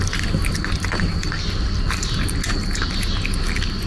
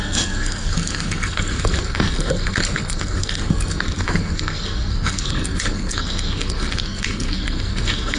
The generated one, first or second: second